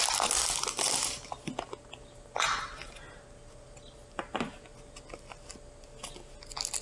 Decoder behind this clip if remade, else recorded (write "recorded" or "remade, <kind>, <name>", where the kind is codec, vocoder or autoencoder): recorded